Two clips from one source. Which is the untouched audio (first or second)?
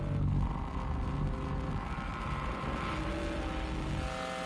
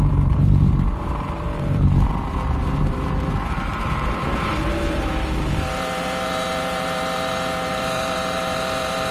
first